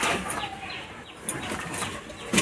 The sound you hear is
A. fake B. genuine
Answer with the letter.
B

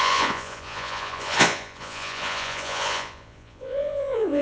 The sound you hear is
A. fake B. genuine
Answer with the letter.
A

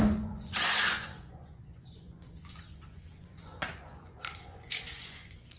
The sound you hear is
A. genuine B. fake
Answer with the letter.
B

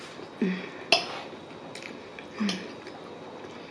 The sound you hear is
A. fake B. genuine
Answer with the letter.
B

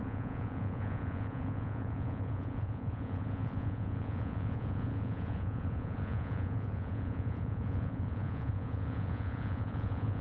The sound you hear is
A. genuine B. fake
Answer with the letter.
B